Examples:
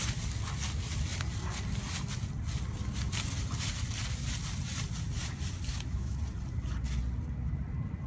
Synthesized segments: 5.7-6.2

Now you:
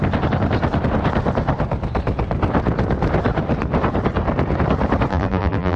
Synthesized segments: 5.1-5.8

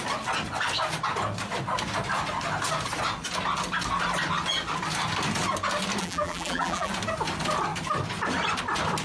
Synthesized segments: 6.0-6.9

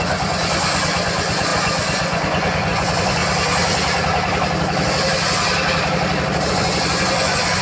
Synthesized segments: 0.0-3.2; 6.5-7.6

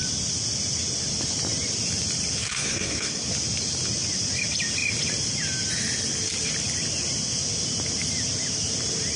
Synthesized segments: 2.4-3.3

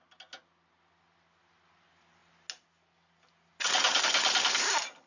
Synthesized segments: none